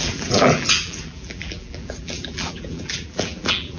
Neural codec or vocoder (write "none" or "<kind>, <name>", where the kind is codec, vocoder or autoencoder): vocoder, BigVGAN v2